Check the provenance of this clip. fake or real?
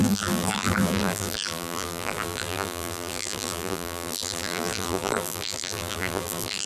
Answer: fake